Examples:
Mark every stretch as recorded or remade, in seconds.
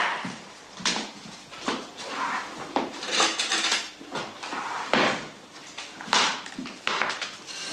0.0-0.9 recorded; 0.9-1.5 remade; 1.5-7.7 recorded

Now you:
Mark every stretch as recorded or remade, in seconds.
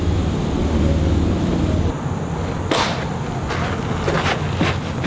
0.0-5.1 recorded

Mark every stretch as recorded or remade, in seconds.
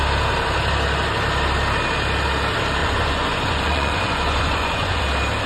0.0-2.8 recorded; 2.8-5.0 remade; 5.0-5.5 recorded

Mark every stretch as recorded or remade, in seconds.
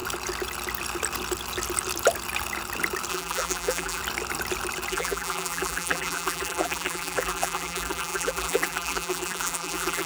0.0-3.1 recorded; 3.1-4.0 remade; 4.0-4.9 recorded; 4.9-10.1 remade